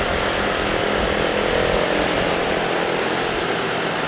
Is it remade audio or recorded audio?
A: recorded